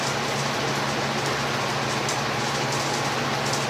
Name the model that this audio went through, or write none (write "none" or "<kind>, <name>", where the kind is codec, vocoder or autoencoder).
none